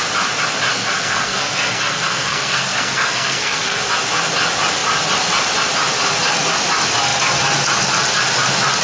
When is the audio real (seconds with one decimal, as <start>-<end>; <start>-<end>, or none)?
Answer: 0.0-0.7; 3.9-8.8